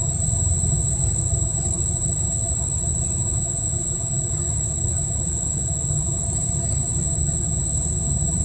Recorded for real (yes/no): yes